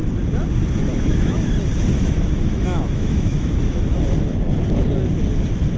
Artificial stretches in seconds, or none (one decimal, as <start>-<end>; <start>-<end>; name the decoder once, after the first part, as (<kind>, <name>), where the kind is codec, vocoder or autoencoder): 0.9-1.4 (autoencoder, DAC-VAE); 1.9-3.9